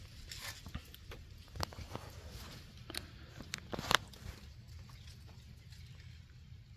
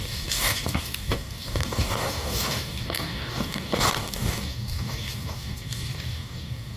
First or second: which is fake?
second